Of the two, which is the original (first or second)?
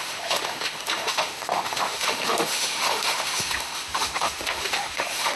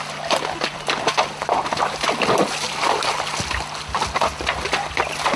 second